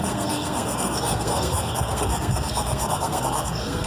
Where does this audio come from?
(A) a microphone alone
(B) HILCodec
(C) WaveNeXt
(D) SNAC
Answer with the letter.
D